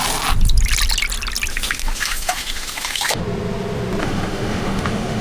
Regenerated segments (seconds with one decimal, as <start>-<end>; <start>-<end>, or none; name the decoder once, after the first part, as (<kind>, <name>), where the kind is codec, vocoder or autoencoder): 1.5-3.2 (autoencoder, DAC-VAE); 4.0-5.2

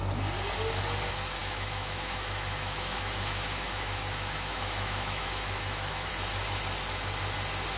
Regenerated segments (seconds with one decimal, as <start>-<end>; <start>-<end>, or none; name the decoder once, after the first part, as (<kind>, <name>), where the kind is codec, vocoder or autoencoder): 1.4-6.1 (autoencoder, DAC-VAE)